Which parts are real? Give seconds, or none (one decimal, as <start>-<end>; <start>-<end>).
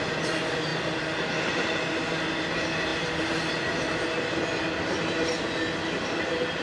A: 0.0-6.6